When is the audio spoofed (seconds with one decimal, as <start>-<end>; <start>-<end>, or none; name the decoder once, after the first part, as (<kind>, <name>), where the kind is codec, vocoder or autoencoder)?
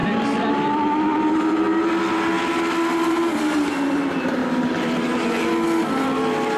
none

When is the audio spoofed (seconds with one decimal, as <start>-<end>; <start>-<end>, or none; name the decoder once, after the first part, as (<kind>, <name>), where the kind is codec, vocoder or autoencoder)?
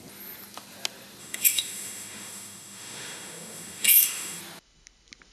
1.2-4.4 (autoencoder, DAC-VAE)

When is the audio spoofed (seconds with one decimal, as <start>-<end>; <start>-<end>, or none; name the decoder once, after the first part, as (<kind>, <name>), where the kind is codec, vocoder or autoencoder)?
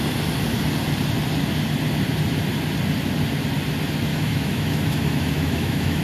4.1-6.0 (autoencoder, DAC-VAE)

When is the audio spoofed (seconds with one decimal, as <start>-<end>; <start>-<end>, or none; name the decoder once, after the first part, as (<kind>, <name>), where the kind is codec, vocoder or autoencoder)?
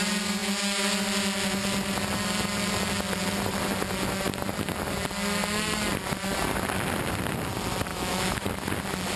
7.9-8.5 (autoencoder, DAC-VAE)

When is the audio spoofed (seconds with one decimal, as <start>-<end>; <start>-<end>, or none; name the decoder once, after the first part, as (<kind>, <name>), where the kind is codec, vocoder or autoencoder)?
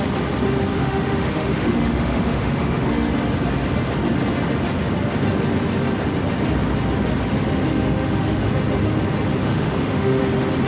0.7-3.1 (autoencoder, DAC-VAE); 7.7-8.5; 9.4-10.2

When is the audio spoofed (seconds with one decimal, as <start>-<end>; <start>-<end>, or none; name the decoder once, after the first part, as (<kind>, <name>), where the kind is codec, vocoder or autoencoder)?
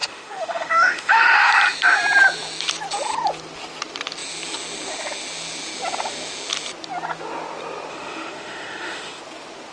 0.0-1.5 (autoencoder, DAC-VAE); 7.9-9.2